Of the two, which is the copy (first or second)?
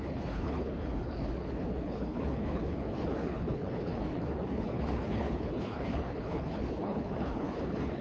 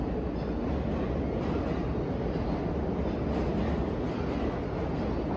first